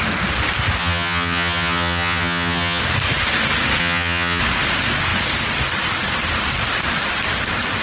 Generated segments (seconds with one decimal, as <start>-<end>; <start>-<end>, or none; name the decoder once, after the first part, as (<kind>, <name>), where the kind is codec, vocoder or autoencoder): 0.8-2.8 (vocoder, HiFi-GAN); 3.8-4.4